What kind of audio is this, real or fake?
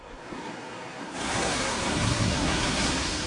fake